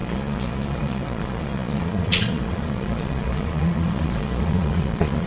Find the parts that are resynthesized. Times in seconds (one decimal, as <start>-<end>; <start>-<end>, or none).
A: 0.0-5.3